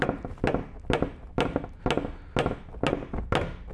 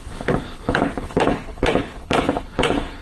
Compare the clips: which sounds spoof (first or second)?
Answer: second